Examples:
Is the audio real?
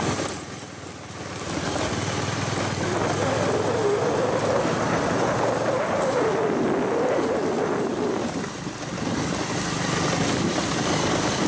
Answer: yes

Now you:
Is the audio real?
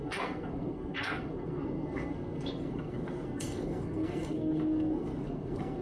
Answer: no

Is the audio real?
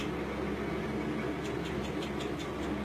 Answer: yes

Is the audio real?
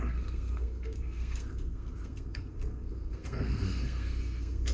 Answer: no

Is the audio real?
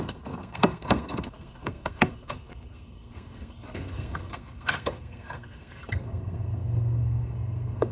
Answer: no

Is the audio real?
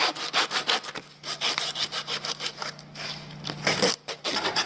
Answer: yes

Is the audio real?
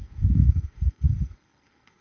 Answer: no